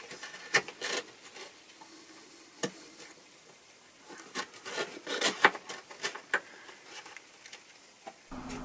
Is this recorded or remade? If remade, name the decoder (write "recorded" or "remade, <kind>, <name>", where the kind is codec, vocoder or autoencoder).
recorded